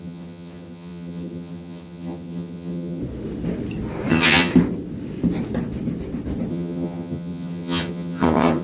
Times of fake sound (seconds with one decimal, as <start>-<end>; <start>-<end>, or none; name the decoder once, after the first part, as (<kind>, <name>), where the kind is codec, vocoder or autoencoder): 0.0-3.0 (vocoder, HiFi-GAN); 4.1-4.5; 6.5-8.6

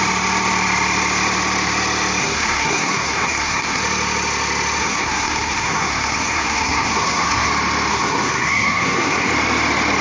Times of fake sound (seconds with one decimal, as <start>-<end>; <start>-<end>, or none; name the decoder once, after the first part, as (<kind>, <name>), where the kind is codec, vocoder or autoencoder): 2.2-3.8 (codec, SNAC); 4.8-7.5; 7.9-9.3

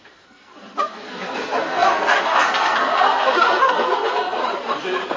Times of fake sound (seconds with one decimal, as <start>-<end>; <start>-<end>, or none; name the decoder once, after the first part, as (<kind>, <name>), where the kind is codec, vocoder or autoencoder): 0.0-4.4 (codec, SNAC)

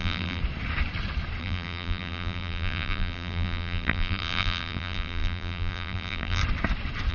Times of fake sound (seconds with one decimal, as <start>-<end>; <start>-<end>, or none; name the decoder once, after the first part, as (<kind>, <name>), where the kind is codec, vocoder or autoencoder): 0.0-0.4 (vocoder, BigVGAN v2); 1.4-6.4

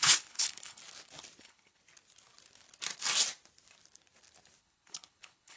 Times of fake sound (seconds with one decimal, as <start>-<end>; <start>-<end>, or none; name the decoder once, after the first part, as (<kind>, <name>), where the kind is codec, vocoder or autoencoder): 0.0-0.8 (codec, HILCodec); 1.4-1.8; 4.6-5.6